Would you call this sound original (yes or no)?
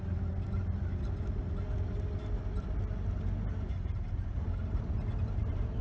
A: yes